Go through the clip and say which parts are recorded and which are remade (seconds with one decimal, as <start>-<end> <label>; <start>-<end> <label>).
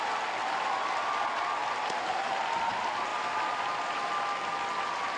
0.0-5.2 recorded